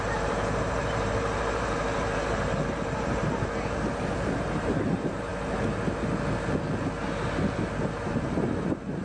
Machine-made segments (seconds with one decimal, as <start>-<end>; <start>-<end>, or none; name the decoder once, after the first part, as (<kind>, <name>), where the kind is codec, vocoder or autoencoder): 0.0-5.3 (vocoder, BigVGAN v2); 7.8-9.0